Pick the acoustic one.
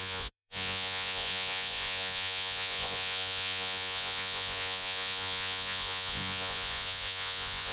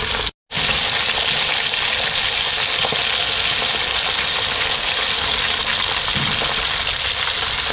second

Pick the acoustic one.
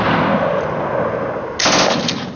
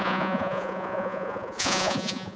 first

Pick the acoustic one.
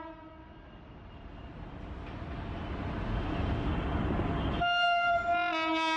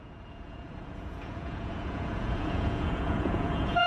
first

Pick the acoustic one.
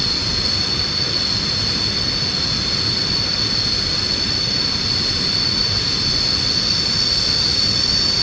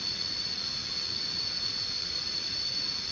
first